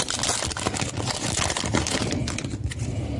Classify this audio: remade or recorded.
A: recorded